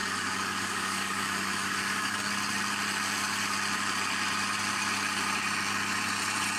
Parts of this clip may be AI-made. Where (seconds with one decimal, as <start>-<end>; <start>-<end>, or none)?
0.0-2.3